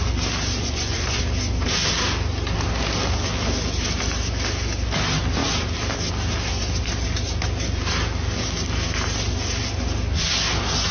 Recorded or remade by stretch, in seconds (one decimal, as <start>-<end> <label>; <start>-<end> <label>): 0.0-0.6 recorded; 0.6-1.2 remade; 1.2-10.9 recorded